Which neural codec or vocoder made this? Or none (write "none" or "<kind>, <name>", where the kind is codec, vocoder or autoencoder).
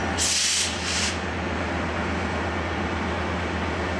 none